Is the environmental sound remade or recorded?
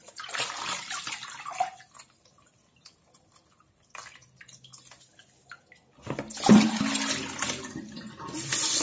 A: recorded